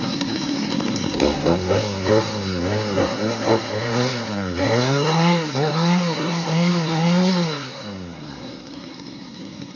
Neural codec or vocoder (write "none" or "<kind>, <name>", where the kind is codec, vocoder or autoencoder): codec, SNAC